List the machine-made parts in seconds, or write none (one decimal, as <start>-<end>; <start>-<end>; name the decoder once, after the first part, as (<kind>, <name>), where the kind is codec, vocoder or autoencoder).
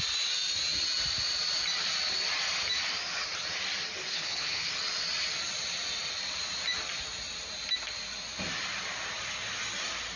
4.1-4.7 (codec, HILCodec)